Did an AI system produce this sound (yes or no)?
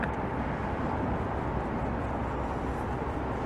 no